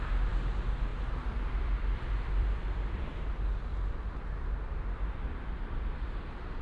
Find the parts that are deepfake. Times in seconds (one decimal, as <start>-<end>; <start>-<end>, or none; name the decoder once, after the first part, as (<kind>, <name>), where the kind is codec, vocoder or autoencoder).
0.0-3.7 (vocoder, BigVGAN v2); 4.9-6.6